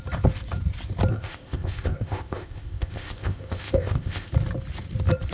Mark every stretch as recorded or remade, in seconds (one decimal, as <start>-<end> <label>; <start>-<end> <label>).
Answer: 0.0-1.1 recorded; 1.1-4.3 remade; 4.3-5.3 recorded

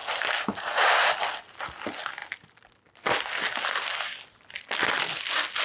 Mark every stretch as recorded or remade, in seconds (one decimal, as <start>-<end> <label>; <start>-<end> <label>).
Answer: 0.0-1.6 remade; 1.6-2.2 recorded; 2.2-5.1 remade; 5.1-5.6 recorded

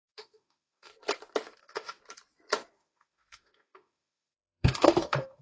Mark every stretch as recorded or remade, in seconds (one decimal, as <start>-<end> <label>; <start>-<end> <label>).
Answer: 0.0-0.9 remade; 0.9-1.6 recorded; 1.6-2.0 remade; 2.0-2.7 recorded; 2.7-5.4 remade

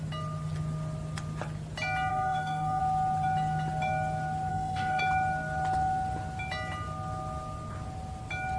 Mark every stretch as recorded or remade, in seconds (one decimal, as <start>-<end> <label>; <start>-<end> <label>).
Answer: 0.0-2.1 recorded; 2.1-2.8 remade; 2.8-4.5 recorded; 4.5-5.0 remade; 5.0-8.6 recorded

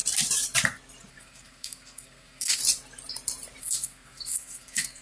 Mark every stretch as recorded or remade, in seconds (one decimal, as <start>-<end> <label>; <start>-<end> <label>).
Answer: 0.0-1.1 recorded; 1.1-2.6 remade; 2.6-3.6 recorded; 3.6-5.0 remade

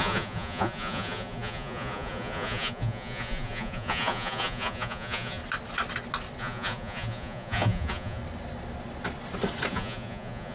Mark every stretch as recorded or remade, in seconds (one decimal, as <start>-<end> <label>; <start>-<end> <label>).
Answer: 0.0-5.4 remade; 5.4-6.4 recorded; 6.4-8.2 remade; 8.2-9.7 recorded; 9.7-10.5 remade

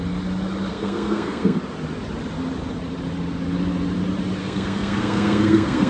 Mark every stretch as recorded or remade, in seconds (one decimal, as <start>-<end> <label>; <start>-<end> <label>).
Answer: 0.0-0.7 recorded; 0.7-1.6 remade; 1.6-4.4 recorded; 4.4-5.9 remade

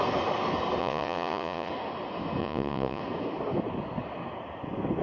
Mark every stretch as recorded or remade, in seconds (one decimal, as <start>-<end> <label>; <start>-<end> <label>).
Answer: 0.0-0.8 recorded; 0.8-1.7 remade; 1.7-2.4 recorded; 2.4-3.0 remade; 3.0-5.0 recorded